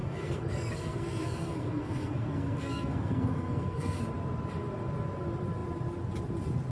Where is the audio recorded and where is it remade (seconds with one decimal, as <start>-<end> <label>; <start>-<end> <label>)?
0.0-4.0 remade; 4.0-6.7 recorded